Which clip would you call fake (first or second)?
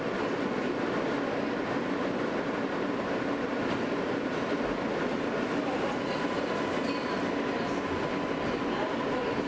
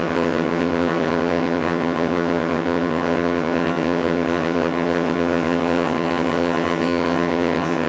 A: second